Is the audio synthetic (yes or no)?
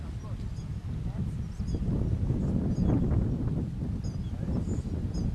no